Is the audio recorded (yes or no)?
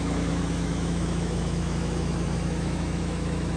no